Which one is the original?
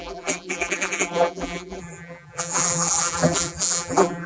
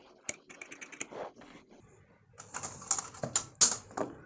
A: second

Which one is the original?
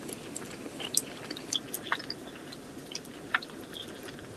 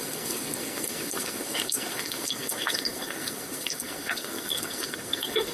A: first